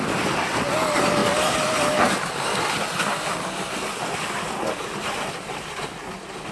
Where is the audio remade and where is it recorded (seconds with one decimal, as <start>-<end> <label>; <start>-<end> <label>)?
0.0-6.5 recorded